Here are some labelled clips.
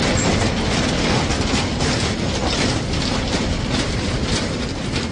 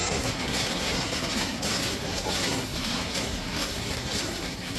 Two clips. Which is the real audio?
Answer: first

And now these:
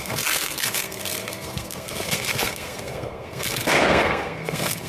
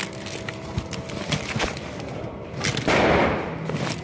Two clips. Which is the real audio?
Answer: second